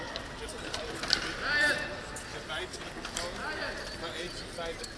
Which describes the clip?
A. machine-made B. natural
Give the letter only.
B